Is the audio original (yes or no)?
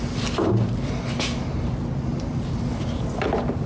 yes